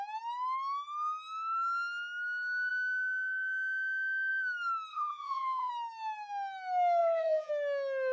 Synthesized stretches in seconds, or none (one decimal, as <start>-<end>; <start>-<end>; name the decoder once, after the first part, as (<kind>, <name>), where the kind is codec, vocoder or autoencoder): 4.9-5.7 (vocoder, BigVGAN v2); 7.0-7.5